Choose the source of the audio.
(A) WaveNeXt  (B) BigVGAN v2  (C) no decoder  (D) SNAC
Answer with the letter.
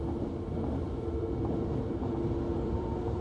B